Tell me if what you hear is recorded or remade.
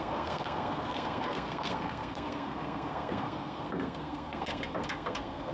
remade